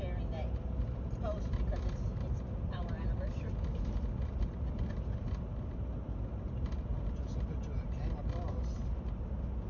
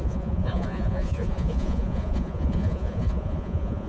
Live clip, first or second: first